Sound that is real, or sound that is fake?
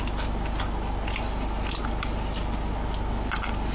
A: real